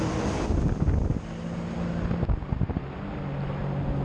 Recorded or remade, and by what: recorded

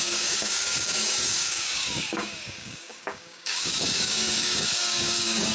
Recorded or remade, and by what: remade, codec, DAC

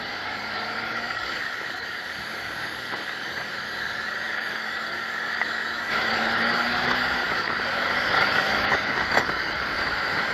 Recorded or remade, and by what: remade, codec, DAC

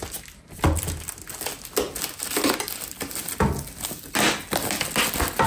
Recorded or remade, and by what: recorded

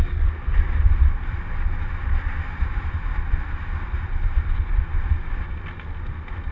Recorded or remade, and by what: recorded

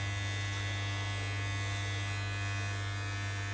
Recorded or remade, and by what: recorded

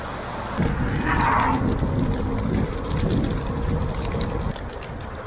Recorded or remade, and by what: recorded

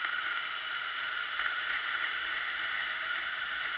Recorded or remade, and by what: recorded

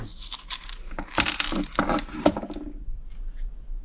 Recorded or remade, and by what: recorded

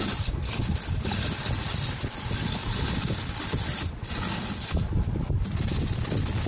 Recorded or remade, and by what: recorded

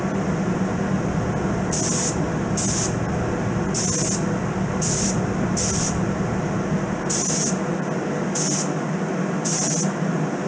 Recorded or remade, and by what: recorded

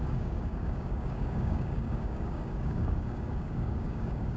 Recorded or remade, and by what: remade, codec, DAC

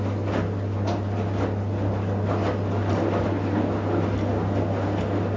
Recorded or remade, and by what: recorded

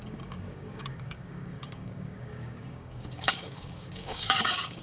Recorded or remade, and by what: remade, codec, DAC